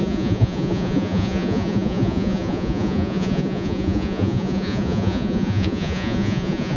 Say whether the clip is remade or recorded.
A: remade